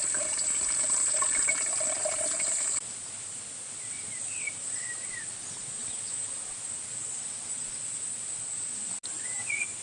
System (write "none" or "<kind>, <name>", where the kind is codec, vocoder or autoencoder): none